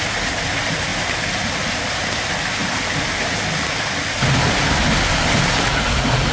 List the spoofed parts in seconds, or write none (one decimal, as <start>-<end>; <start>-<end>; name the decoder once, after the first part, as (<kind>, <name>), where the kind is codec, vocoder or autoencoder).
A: none

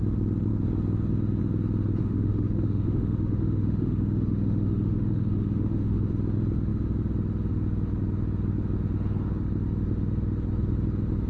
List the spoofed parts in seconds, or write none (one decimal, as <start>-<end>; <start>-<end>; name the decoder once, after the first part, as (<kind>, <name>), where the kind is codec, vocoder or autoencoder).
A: 2.0-6.1 (autoencoder, DAC-VAE)

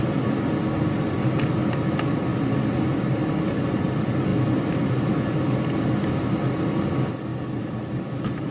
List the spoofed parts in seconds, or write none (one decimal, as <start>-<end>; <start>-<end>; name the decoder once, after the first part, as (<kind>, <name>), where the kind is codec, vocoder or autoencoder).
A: none

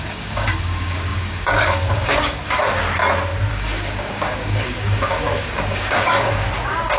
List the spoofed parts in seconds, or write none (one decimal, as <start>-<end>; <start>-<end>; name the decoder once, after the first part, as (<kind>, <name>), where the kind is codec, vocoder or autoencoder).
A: 0.0-3.0 (codec, DAC); 3.5-7.0